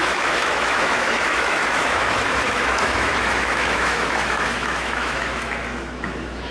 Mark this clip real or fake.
fake